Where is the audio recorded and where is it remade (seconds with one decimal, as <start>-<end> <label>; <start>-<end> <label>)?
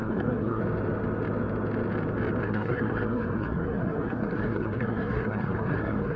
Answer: 0.0-0.6 remade; 0.6-2.4 recorded; 2.4-6.2 remade